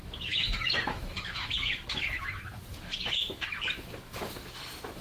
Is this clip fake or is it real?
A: fake